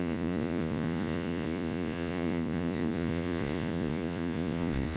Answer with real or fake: fake